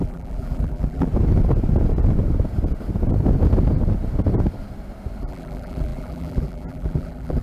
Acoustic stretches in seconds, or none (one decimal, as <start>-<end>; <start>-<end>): 1.1-5.2